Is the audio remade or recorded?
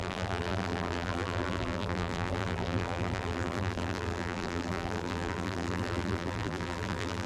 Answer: remade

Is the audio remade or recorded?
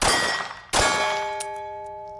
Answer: recorded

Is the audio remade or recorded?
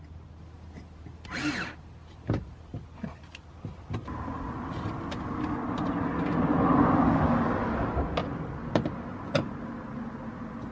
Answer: recorded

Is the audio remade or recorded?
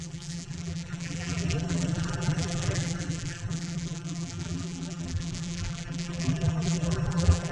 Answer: remade